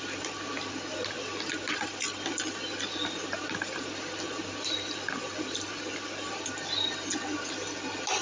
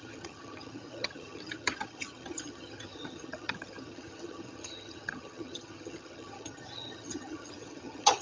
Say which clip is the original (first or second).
first